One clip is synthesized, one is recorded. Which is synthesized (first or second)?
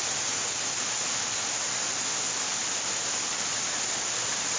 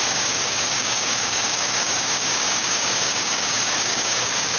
second